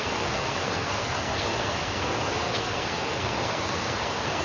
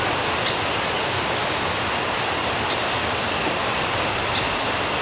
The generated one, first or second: first